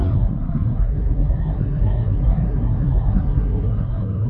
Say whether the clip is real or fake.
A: fake